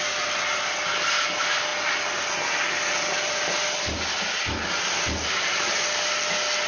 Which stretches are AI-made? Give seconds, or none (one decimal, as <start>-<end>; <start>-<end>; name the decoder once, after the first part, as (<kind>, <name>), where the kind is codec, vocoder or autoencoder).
none